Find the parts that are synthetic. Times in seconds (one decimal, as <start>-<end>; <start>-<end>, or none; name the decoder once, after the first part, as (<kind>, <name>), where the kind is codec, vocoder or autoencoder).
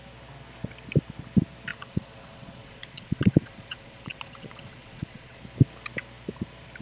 1.7-5.4 (vocoder, Vocos)